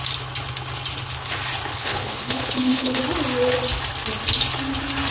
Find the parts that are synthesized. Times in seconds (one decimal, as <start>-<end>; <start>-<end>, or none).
1.7-3.0